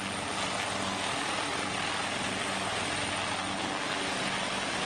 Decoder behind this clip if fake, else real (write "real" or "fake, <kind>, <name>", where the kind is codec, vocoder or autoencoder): real